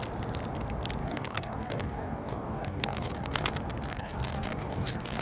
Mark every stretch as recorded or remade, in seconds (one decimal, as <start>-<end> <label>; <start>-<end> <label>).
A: 0.0-1.0 recorded; 1.0-3.5 remade; 3.5-3.9 recorded; 3.9-5.2 remade